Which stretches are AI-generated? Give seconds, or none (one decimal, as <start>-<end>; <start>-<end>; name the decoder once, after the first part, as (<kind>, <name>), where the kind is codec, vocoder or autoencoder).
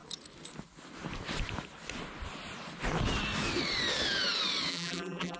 4.7-5.4 (vocoder, BigVGAN v2)